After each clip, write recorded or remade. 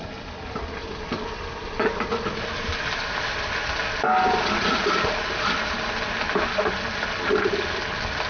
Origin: recorded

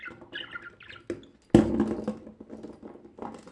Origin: recorded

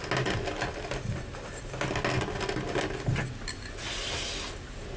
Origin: recorded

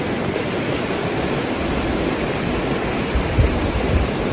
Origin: recorded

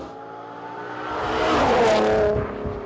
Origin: recorded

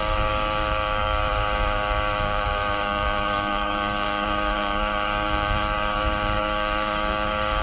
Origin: remade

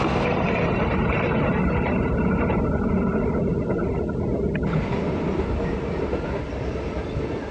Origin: recorded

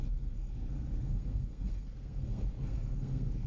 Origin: remade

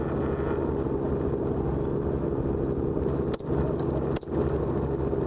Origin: recorded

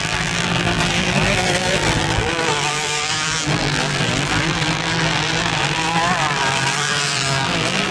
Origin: remade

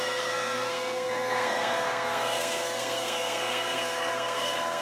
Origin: remade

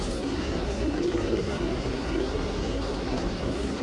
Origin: remade